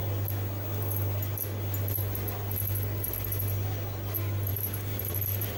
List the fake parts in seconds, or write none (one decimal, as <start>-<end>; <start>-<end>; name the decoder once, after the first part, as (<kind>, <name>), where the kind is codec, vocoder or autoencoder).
4.5-5.6 (vocoder, BigVGAN v2)

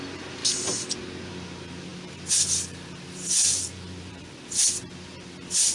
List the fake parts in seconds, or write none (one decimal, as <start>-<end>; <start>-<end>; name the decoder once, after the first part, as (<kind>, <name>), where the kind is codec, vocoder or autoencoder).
0.0-0.4 (vocoder, BigVGAN v2); 1.3-5.7